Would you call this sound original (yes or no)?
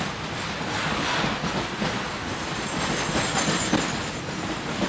yes